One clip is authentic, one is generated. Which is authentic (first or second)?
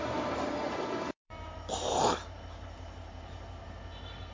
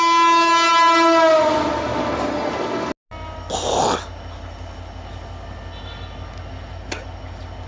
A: second